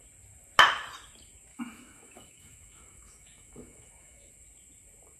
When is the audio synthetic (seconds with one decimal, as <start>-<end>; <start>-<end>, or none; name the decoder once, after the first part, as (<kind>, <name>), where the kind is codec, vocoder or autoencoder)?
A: 1.5-4.3 (autoencoder, DAC-VAE)